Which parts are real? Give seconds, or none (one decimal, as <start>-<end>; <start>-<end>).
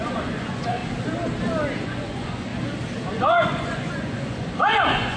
0.8-1.8; 2.5-3.1